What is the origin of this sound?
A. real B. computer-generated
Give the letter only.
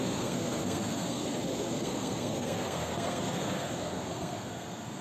B